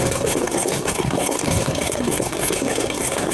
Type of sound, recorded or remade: remade